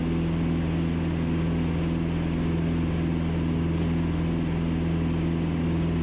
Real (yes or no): yes